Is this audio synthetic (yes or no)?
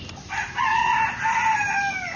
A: no